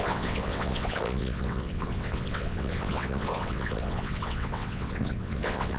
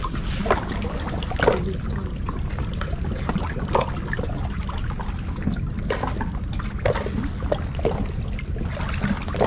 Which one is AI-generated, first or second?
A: first